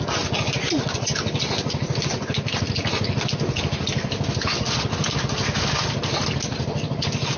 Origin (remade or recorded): recorded